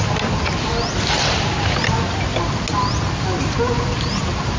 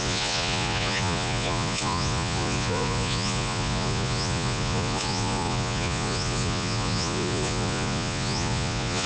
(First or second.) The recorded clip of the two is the first